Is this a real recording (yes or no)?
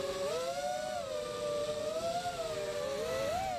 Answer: yes